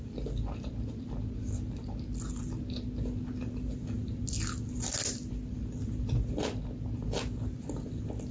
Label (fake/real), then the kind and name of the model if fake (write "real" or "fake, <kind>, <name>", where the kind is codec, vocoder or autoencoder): real